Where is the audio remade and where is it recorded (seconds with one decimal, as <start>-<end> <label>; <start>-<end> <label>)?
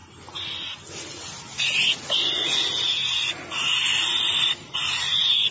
0.0-3.7 recorded; 3.7-5.5 remade